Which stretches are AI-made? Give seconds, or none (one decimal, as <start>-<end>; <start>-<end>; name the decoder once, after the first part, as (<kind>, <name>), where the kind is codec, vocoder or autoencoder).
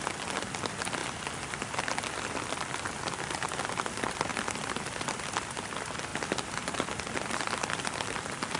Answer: none